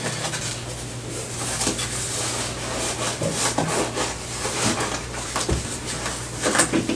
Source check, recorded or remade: recorded